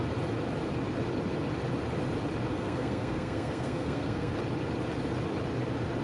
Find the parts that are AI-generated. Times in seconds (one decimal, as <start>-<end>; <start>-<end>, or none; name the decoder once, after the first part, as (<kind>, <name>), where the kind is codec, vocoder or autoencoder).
2.5-4.3 (codec, SNAC)